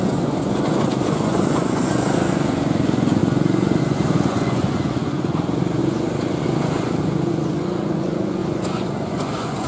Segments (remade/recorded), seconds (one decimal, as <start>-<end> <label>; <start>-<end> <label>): 0.0-9.7 remade